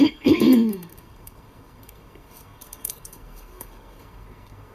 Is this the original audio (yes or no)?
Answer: no